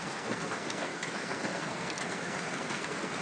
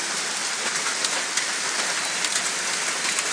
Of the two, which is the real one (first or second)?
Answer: second